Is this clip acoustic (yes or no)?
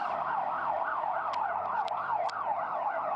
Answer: yes